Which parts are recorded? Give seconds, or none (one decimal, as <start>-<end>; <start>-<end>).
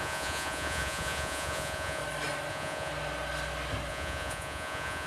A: 2.0-2.5; 2.9-3.9